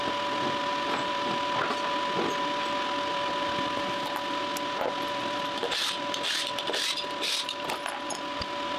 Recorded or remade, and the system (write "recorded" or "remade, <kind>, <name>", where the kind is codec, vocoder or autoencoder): recorded